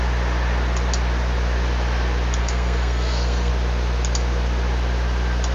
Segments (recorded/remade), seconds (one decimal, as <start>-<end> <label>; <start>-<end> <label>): 0.0-2.4 recorded; 2.4-3.5 remade; 3.5-5.5 recorded